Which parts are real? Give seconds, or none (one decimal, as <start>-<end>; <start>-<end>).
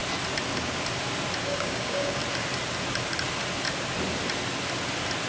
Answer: 0.0-1.4; 2.2-5.3